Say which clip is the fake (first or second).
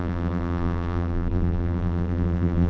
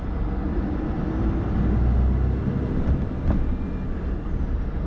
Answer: first